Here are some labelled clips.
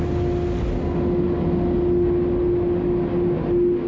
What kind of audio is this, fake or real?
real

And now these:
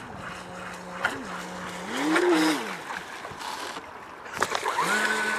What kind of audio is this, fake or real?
real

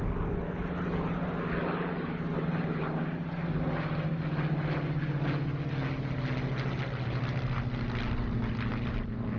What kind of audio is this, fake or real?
real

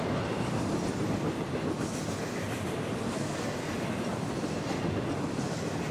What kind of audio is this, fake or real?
real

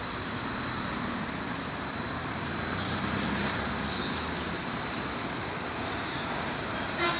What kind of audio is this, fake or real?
fake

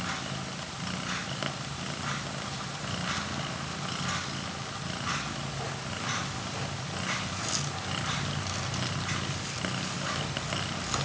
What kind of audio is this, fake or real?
real